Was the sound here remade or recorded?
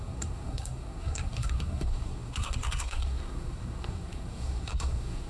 remade